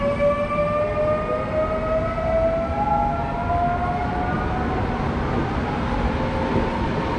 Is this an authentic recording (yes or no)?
yes